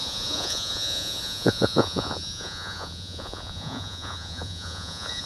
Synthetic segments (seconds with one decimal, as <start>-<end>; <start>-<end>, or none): 0.0-5.3